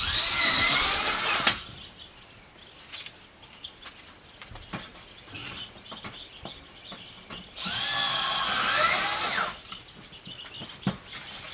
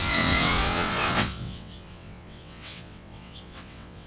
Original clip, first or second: first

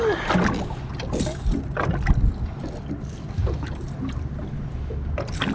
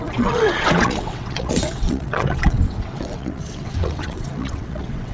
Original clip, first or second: first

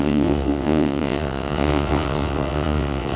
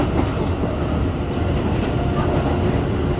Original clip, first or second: second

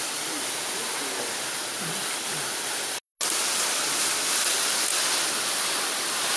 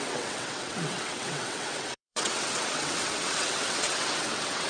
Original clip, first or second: first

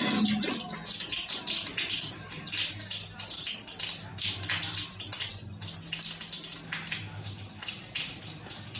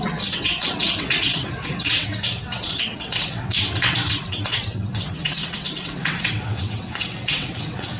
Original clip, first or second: first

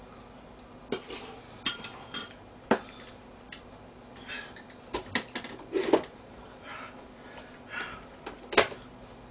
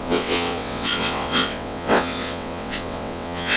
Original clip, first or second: first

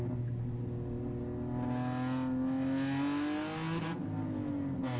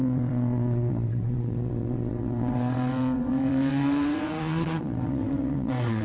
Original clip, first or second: first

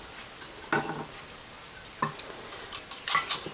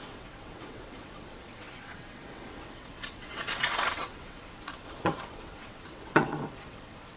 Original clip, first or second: first